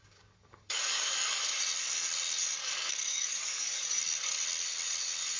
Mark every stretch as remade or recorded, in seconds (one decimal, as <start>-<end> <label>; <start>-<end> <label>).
0.0-1.4 remade; 1.4-2.6 recorded; 2.6-4.0 remade; 4.0-5.4 recorded